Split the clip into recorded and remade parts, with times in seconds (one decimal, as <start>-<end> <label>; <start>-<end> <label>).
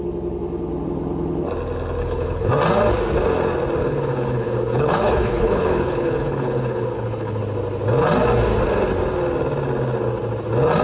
0.0-2.0 recorded; 2.0-2.5 remade; 2.5-3.8 recorded; 3.8-7.4 remade; 7.4-10.8 recorded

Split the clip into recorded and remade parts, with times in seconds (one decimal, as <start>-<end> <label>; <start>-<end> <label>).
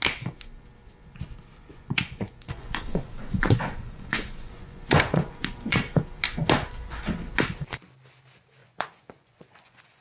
0.0-1.5 recorded; 1.5-5.8 remade; 5.8-8.6 recorded; 8.6-10.0 remade